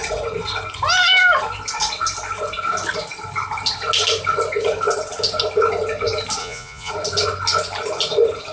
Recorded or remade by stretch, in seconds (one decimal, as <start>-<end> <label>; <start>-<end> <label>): 0.0-6.4 recorded; 6.4-6.9 remade; 6.9-8.5 recorded